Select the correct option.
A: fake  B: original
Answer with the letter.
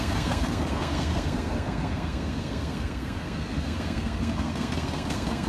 A